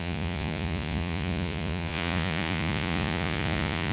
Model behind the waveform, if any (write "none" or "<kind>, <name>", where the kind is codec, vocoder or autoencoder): vocoder, Vocos